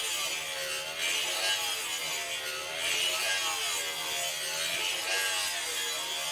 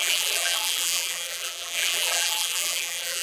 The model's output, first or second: second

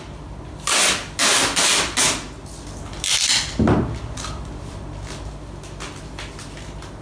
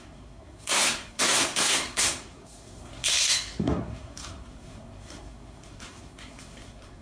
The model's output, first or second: second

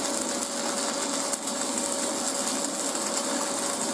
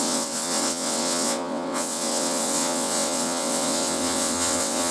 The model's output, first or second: second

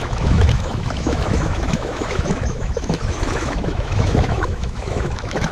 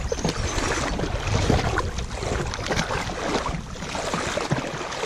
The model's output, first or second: first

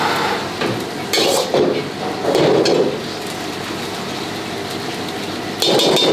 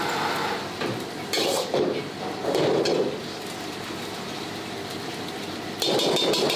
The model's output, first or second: second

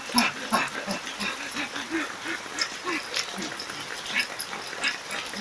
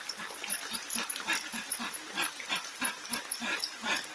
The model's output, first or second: second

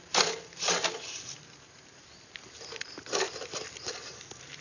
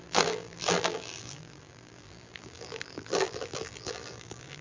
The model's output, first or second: second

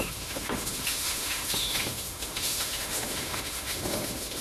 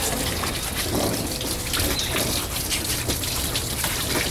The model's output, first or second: first